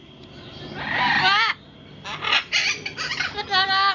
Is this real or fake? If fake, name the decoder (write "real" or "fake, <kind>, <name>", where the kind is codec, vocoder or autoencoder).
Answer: real